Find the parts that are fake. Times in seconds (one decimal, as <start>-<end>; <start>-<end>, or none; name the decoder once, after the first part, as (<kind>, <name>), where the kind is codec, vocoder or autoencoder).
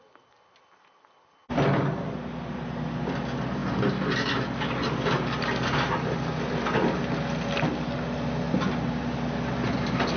none